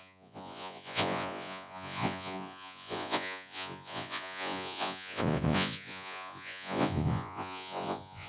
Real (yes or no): no